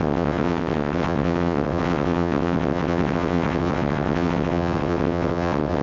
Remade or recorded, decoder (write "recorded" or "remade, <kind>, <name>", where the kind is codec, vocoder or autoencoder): remade, vocoder, WaveNeXt